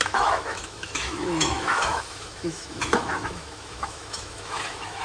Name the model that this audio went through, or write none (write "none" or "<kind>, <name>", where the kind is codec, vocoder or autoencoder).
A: autoencoder, DAC-VAE